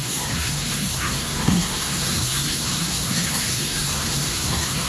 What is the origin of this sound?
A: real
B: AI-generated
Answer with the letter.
B